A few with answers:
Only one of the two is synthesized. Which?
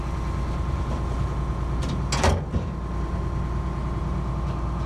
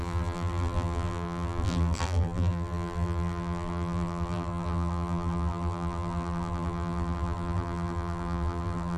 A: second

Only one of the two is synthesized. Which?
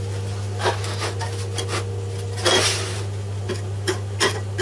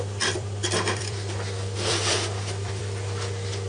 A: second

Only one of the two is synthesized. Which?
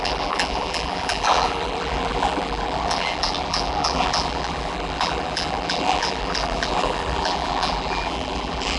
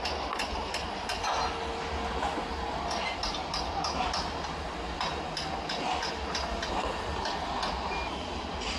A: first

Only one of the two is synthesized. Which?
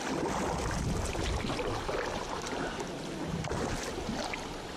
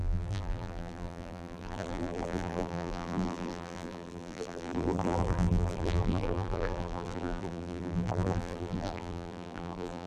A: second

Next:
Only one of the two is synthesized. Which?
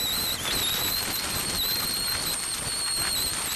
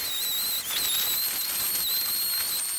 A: first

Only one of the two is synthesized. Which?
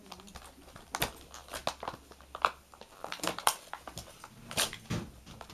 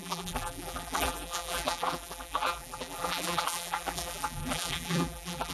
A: second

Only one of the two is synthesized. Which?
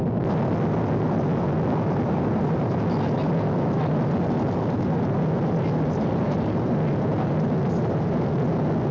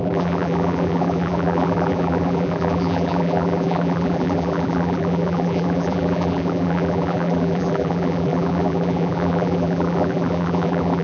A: second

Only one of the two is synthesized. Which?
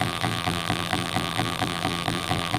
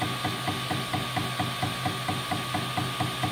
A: first